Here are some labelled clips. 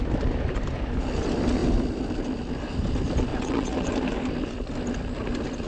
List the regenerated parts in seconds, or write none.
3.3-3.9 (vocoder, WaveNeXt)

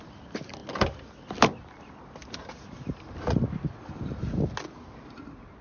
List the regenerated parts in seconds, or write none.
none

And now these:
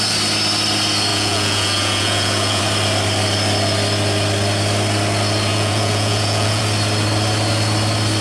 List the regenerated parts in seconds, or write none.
1.1-2.6 (vocoder, Vocos); 5.5-6.6

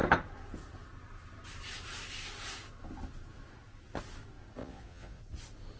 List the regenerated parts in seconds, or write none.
4.6-5.2 (vocoder, Vocos)

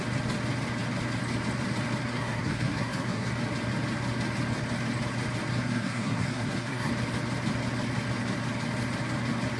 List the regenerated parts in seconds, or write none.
2.1-3.3 (codec, SNAC); 5.5-6.9

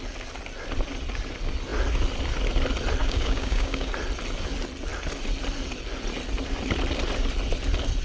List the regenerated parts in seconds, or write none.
3.0-3.9 (codec, DAC)